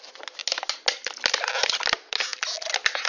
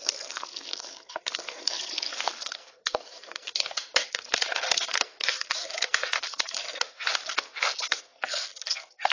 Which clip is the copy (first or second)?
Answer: second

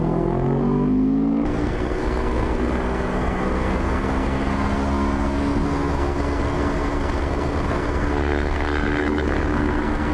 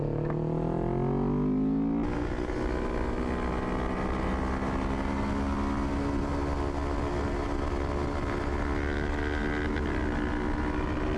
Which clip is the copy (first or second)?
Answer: first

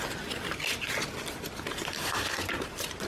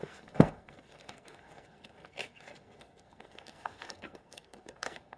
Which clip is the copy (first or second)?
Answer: second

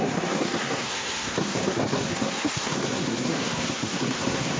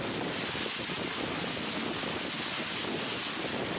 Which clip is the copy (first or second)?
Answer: first